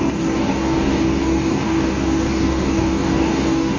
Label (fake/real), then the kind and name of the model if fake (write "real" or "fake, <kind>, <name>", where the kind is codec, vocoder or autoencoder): fake, codec, DAC